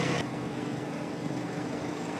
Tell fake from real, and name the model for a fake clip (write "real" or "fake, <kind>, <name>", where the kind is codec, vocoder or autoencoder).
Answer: fake, codec, SNAC